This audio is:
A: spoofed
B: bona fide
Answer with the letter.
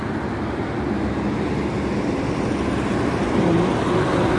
B